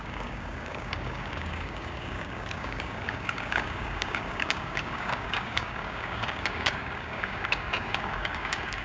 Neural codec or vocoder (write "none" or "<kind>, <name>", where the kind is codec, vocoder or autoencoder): codec, DAC